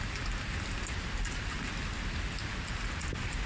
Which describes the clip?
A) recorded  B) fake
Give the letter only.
A